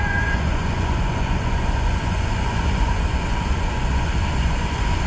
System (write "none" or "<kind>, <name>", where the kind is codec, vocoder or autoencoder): vocoder, Vocos